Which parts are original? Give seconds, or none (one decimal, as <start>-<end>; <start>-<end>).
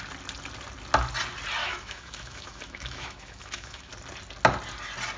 0.0-1.6; 3.9-5.2